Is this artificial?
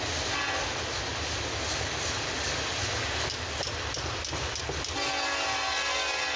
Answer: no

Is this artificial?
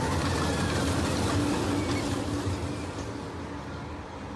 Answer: no